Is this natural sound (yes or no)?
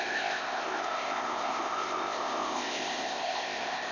no